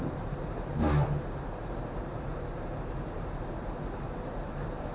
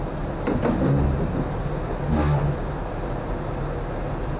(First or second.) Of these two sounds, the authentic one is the second